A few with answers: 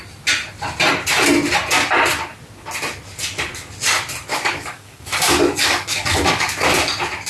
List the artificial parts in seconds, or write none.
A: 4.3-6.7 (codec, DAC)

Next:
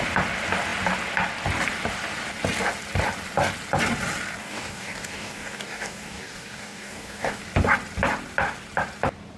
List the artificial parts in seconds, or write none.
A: 4.4-7.4 (codec, DAC)

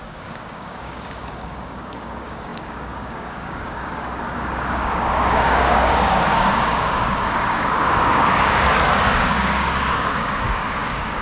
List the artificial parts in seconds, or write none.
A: 0.0-11.2 (codec, DAC)